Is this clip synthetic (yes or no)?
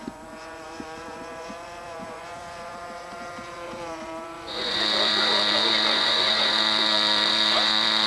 yes